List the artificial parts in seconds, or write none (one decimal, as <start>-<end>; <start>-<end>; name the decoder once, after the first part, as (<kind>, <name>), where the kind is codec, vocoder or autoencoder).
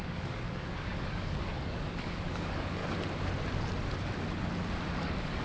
0.0-2.8 (codec, DAC); 4.9-5.4